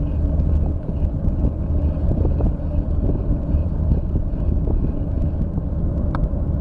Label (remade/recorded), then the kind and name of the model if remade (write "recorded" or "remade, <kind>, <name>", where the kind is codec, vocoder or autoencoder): recorded